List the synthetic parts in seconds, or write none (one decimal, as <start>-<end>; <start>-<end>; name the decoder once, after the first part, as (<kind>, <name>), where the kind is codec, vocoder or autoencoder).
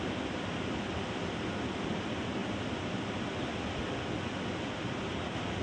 0.0-2.4 (vocoder, BigVGAN v2)